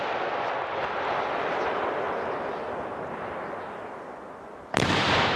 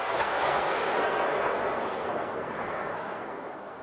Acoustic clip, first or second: first